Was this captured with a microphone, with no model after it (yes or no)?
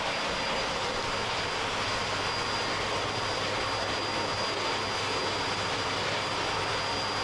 yes